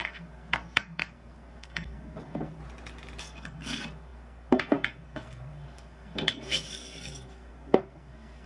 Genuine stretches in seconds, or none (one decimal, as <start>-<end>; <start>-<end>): 2.6-3.2